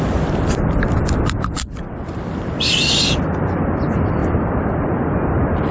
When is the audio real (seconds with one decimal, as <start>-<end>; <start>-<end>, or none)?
none